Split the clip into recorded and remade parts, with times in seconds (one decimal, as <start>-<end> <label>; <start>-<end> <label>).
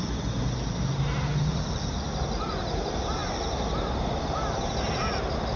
0.0-5.6 recorded